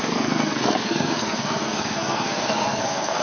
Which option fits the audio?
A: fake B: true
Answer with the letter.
A